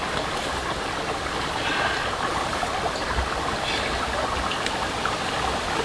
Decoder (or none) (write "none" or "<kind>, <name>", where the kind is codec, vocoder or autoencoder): none